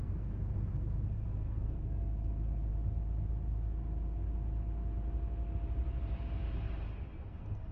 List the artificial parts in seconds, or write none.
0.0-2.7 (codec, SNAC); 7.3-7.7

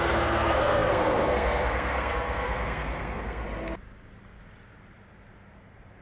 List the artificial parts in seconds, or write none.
0.0-3.4 (codec, SNAC)

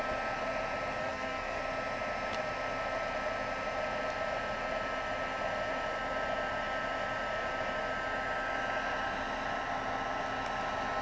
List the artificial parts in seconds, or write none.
1.0-1.6 (codec, SNAC)

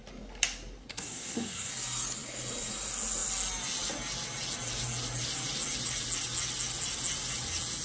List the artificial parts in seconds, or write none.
0.9-1.7 (codec, SNAC)

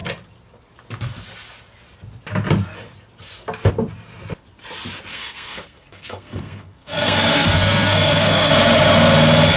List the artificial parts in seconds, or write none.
5.1-8.5 (codec, SNAC)